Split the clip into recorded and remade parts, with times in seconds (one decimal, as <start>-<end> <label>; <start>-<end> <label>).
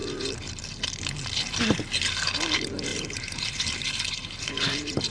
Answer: 0.0-5.1 recorded